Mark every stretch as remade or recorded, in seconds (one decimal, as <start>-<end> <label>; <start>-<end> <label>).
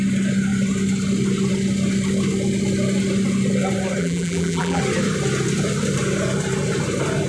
0.0-4.0 recorded; 4.0-4.8 remade; 4.8-7.3 recorded